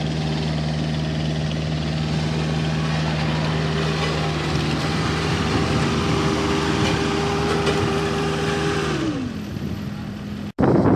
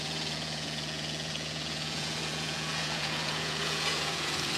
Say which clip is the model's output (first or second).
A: second